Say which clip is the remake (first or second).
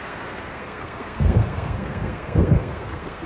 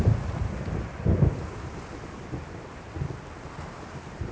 first